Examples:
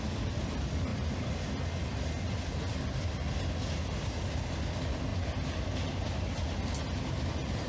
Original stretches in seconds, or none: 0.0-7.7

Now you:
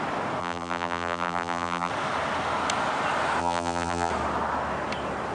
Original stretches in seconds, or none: 0.0-0.4; 1.9-3.4; 4.1-5.3

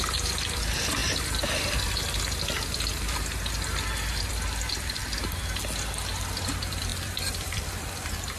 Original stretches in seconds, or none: 1.0-4.3; 5.0-6.5

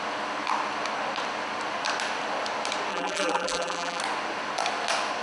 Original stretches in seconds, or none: 0.0-2.9; 4.0-5.2